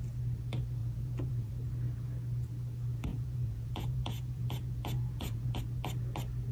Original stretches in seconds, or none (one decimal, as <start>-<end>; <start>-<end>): 0.0-0.8; 1.5-3.1; 5.6-6.5